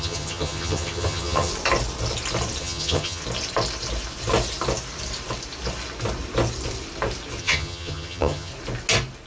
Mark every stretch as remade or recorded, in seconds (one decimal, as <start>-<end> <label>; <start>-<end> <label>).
0.0-1.5 remade; 1.5-2.6 recorded; 2.6-3.2 remade; 3.2-7.4 recorded; 7.4-8.5 remade; 8.5-9.3 recorded